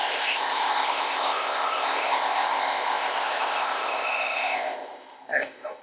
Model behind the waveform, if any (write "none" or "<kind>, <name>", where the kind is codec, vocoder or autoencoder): codec, ZipCodec